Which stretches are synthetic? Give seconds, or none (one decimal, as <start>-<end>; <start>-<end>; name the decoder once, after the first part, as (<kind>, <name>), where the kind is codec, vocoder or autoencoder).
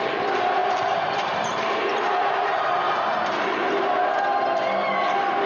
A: 0.6-3.9 (vocoder, BigVGAN v2)